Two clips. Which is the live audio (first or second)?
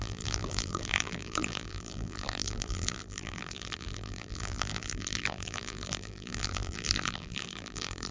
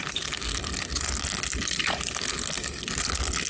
second